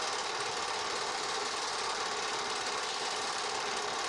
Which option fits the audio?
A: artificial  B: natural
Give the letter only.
A